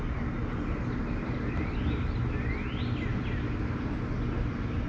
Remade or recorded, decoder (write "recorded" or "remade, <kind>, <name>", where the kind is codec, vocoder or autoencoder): recorded